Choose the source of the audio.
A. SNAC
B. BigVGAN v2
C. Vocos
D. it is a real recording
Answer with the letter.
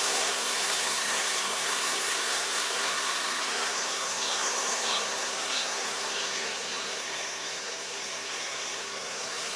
A